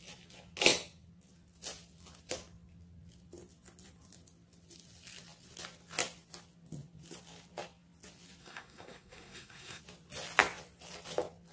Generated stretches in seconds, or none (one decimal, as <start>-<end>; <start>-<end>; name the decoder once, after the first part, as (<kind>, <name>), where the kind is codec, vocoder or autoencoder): 8.4-9.8 (codec, SNAC)